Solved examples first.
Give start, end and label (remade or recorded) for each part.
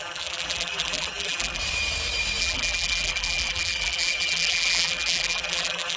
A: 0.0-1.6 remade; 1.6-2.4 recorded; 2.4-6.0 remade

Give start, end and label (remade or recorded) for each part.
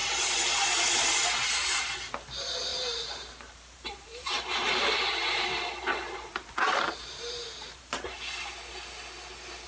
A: 0.0-2.7 recorded; 2.7-7.9 remade; 7.9-9.7 recorded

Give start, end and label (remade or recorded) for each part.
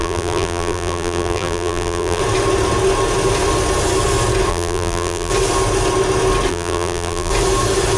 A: 0.0-2.2 remade; 2.2-4.5 recorded; 4.5-5.3 remade; 5.3-6.5 recorded; 6.5-7.3 remade; 7.3-8.0 recorded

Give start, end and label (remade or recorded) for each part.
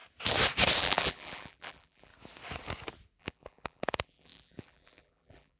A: 0.0-0.8 recorded; 0.8-2.1 remade; 2.1-3.2 recorded; 3.2-5.6 remade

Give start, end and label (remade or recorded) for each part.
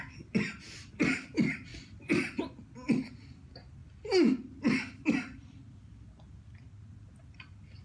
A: 0.0-1.7 recorded; 1.7-2.4 remade; 2.4-7.8 recorded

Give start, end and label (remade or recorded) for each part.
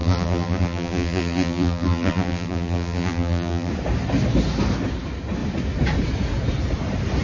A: 0.0-3.7 remade; 3.7-7.2 recorded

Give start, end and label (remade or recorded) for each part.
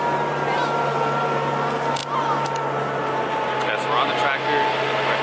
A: 0.0-5.2 recorded